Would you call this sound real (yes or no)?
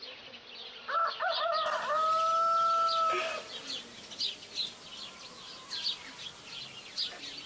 yes